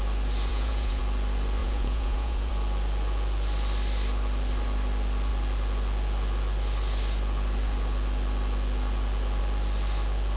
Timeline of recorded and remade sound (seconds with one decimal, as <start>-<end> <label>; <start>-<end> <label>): 0.0-0.5 recorded; 0.5-1.0 remade; 1.0-1.6 recorded; 1.6-2.5 remade; 2.5-10.4 recorded